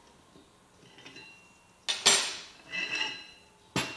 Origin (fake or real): real